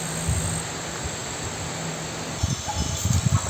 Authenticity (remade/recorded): recorded